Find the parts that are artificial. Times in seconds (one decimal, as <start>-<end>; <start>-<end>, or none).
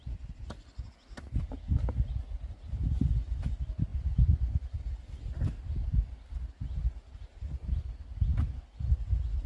none